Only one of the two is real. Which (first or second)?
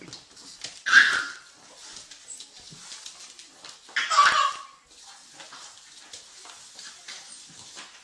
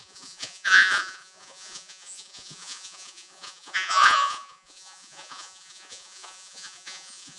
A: first